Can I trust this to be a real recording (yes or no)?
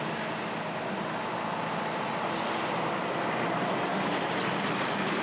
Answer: yes